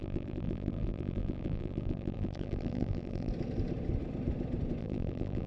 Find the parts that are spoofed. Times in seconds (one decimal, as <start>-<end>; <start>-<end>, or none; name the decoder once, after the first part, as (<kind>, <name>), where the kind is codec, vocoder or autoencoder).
0.0-3.3 (vocoder, BigVGAN v2); 4.8-5.5